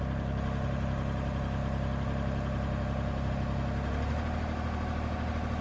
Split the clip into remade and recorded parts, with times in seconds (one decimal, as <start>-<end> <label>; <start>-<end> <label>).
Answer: 0.0-5.6 recorded